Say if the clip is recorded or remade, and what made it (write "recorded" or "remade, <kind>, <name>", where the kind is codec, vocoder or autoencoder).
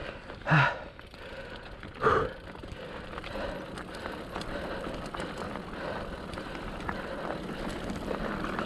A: recorded